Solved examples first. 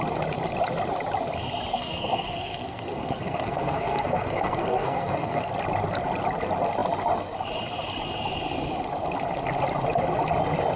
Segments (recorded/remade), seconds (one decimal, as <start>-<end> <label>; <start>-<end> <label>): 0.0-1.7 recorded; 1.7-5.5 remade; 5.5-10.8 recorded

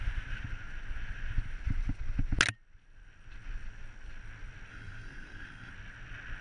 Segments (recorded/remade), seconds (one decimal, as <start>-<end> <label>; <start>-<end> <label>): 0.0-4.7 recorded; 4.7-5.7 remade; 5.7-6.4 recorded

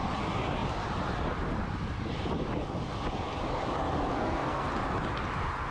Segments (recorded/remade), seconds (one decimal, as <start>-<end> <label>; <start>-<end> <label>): 0.0-4.1 recorded; 4.1-4.7 remade; 4.7-5.7 recorded

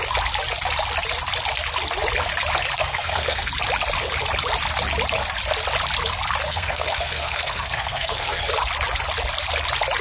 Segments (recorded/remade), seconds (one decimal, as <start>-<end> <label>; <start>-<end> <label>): 0.0-2.8 recorded; 2.8-3.5 remade; 3.5-6.5 recorded; 6.5-8.5 remade; 8.5-10.0 recorded

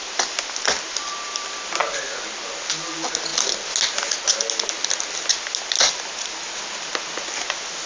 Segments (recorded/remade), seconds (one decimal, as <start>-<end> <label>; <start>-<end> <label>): 0.0-7.9 recorded